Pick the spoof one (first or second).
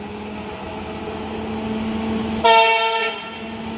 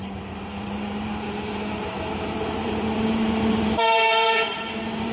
second